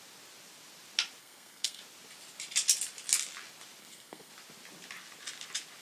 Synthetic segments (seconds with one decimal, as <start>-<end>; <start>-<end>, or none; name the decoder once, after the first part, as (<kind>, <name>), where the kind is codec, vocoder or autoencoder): 1.2-1.8 (codec, SNAC); 3.8-4.3